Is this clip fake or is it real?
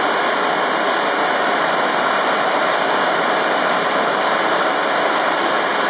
fake